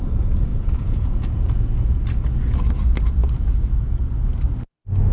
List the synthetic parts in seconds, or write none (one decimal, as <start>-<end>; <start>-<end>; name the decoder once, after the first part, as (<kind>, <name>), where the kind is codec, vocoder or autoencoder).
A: 0.5-1.7 (vocoder, Vocos)